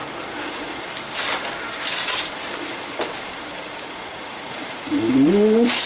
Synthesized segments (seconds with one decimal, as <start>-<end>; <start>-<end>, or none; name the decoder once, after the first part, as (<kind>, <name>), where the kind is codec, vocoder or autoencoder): 3.5-5.0 (vocoder, Vocos)

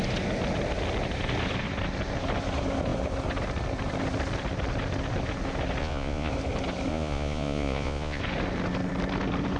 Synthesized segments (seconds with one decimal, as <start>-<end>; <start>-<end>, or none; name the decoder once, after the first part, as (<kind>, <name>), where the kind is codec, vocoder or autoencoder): 5.8-6.3 (vocoder, Vocos); 6.9-8.2

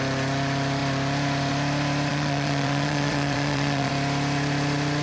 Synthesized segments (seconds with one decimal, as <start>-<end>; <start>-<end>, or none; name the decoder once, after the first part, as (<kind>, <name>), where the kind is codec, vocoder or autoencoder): 2.1-3.9 (vocoder, Vocos)

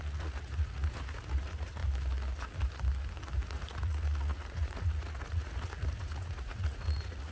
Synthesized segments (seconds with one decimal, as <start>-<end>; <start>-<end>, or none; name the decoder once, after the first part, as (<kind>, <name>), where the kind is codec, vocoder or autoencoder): 0.0-1.8 (vocoder, Vocos); 3.5-7.3